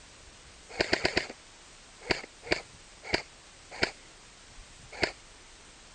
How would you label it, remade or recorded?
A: recorded